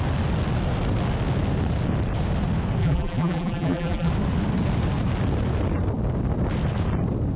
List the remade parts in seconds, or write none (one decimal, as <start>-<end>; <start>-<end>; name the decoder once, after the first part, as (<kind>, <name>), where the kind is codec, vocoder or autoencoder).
2.8-4.1 (vocoder, BigVGAN v2)